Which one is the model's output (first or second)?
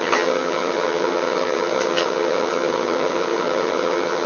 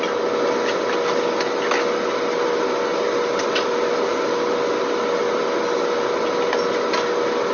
first